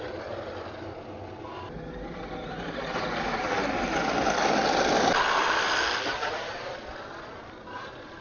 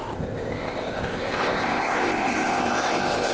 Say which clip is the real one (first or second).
first